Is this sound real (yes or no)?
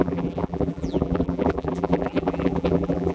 no